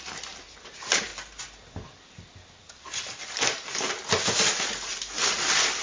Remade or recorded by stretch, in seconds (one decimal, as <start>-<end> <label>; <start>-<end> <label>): 0.0-1.1 remade; 1.1-4.6 recorded; 4.6-5.8 remade